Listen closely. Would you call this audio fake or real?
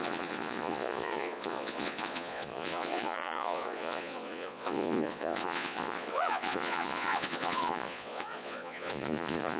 fake